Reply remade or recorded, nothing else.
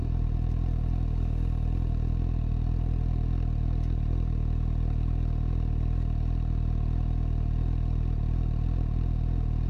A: recorded